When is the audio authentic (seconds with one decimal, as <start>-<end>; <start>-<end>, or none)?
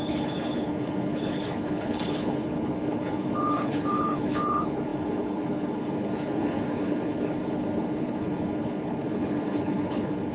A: none